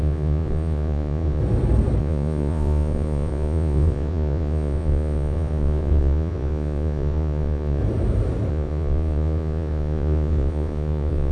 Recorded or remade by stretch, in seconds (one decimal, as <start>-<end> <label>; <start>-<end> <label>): 0.0-1.4 remade; 1.4-2.0 recorded; 2.0-7.8 remade; 7.8-8.5 recorded; 8.5-11.3 remade